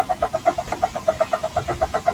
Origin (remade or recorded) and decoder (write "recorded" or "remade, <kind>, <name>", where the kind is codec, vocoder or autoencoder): recorded